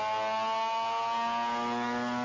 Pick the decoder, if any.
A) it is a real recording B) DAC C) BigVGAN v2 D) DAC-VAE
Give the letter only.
A